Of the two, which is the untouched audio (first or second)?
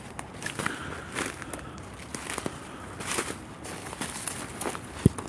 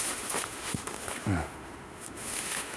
first